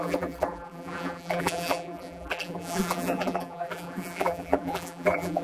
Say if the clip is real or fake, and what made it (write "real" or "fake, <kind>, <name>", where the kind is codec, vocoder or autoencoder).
fake, vocoder, BigVGAN v2